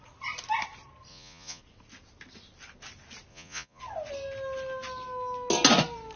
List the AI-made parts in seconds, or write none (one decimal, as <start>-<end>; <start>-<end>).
1.1-1.6; 3.3-3.8